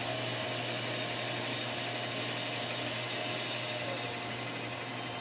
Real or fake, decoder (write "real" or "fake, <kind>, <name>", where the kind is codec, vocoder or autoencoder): real